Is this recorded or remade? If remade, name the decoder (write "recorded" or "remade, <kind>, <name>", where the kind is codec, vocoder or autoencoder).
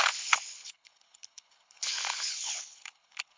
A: remade, codec, HILCodec